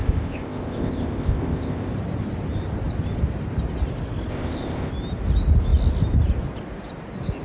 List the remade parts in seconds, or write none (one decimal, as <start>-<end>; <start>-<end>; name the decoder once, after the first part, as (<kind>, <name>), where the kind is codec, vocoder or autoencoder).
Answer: 0.0-1.9 (codec, ZipCodec); 4.3-4.9